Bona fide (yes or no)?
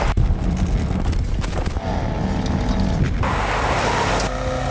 yes